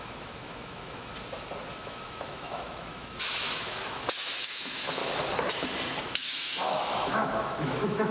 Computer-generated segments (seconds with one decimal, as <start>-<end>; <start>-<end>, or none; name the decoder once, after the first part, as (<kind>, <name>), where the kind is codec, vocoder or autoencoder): 0.0-1.1 (autoencoder, DAC-VAE); 1.7-5.0; 6.0-8.1